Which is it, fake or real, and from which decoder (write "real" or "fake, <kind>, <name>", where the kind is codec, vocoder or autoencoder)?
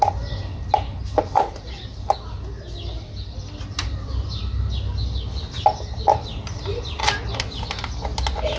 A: real